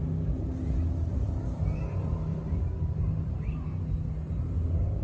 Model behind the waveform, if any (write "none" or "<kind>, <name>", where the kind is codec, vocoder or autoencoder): none